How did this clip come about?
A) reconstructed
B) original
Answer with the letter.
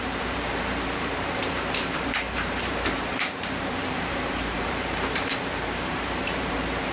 A